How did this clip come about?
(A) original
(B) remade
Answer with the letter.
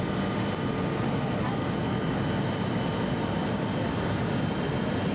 A